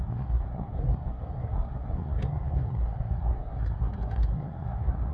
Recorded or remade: remade